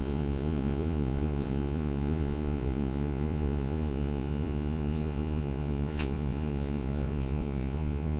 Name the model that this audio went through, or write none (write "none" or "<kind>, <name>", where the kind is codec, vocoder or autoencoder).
vocoder, Vocos